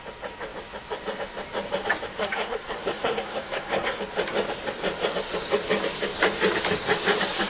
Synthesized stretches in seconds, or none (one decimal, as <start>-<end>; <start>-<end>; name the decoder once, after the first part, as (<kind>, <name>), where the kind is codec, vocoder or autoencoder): 2.2-4.0 (codec, SNAC)